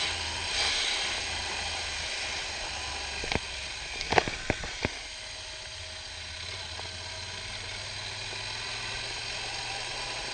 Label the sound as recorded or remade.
recorded